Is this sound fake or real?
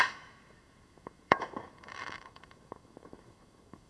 fake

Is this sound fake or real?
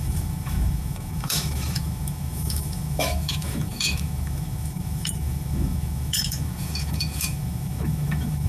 fake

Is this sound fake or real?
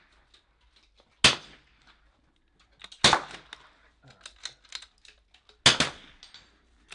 real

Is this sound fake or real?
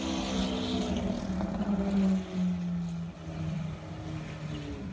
real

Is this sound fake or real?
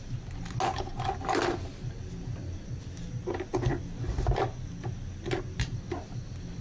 real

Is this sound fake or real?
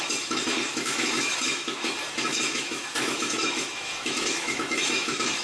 fake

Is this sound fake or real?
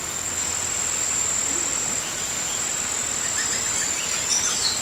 real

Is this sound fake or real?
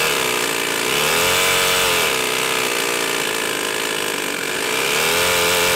real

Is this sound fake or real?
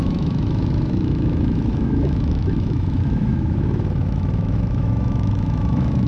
fake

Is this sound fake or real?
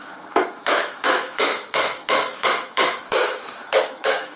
fake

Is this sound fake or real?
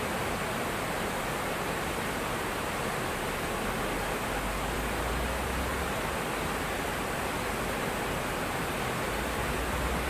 real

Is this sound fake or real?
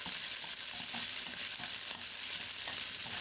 real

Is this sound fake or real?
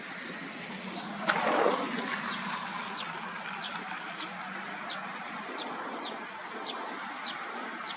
real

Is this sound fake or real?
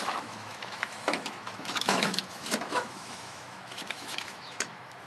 fake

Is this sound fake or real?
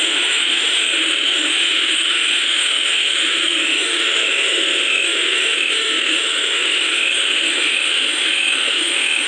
fake